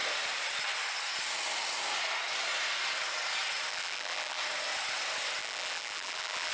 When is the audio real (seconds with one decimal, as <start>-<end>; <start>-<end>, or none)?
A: 0.0-3.7; 4.4-5.4